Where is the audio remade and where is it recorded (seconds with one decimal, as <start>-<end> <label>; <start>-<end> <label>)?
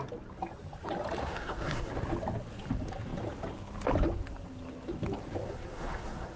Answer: 0.0-1.2 recorded; 1.2-1.9 remade; 1.9-5.4 recorded; 5.4-6.4 remade